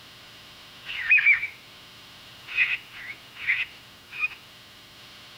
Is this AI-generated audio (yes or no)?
yes